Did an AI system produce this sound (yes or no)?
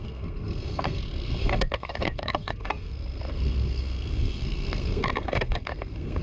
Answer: yes